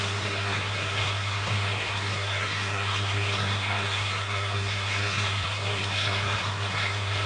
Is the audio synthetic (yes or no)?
yes